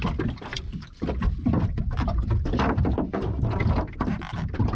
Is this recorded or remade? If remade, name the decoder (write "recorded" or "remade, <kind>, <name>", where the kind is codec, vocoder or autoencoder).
recorded